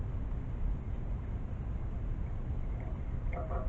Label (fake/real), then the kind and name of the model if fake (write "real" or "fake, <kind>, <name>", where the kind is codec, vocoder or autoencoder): real